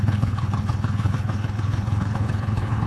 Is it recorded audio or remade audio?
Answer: remade